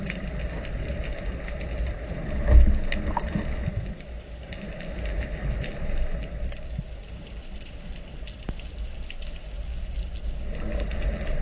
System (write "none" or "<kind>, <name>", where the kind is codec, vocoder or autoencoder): none